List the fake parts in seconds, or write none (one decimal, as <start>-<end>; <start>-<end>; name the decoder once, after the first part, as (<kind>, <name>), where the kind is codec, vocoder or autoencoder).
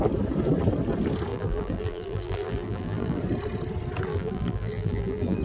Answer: 1.3-3.2 (vocoder, BigVGAN v2); 4.1-5.4